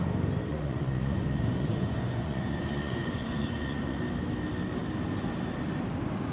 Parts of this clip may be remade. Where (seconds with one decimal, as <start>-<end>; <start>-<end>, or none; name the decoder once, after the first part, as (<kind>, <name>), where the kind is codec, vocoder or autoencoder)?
0.5-4.0 (vocoder, Vocos)